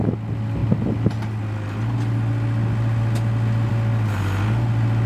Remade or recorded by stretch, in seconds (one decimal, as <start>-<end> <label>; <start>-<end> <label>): 0.0-5.1 recorded